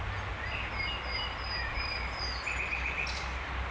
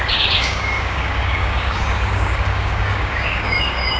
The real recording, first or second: first